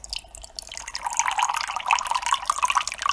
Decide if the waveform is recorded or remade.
recorded